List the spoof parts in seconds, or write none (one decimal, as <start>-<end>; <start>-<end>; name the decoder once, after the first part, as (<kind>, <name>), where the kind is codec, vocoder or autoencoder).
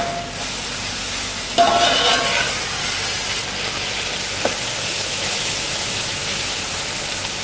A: 1.0-1.7 (autoencoder, DAC-VAE); 4.7-6.9